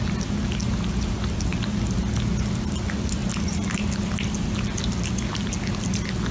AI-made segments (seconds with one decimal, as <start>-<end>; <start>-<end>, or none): none

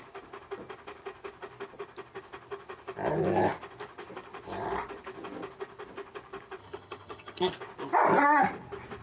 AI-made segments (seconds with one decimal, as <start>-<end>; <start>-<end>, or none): 6.6-7.5